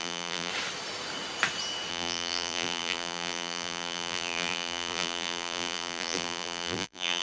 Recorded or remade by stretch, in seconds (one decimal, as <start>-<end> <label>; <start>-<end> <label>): 0.0-0.5 remade; 0.5-1.9 recorded; 1.9-7.2 remade

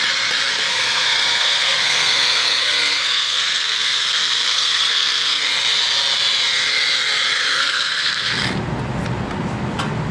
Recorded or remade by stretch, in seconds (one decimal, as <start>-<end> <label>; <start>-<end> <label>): 0.0-0.7 recorded; 0.7-5.4 remade; 5.4-7.5 recorded; 7.5-8.4 remade; 8.4-10.1 recorded

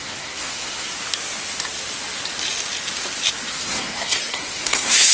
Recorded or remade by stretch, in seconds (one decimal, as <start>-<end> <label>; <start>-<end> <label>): 0.0-0.9 remade; 0.9-3.5 recorded; 3.5-5.1 remade

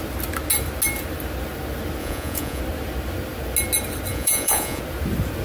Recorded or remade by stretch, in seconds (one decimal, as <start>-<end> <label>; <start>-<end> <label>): 0.0-2.0 recorded; 2.0-2.6 remade; 2.6-4.1 recorded; 4.1-4.8 remade; 4.8-5.4 recorded

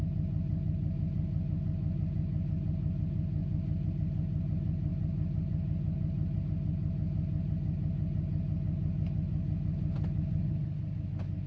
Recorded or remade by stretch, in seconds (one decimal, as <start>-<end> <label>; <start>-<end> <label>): 0.0-11.5 recorded

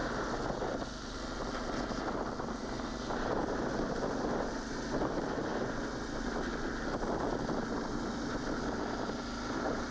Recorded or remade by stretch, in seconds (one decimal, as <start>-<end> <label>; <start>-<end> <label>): 0.0-9.9 recorded